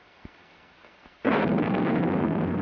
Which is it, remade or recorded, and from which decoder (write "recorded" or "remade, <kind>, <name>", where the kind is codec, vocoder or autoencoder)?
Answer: remade, codec, SNAC